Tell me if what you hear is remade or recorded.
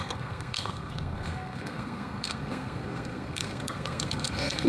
remade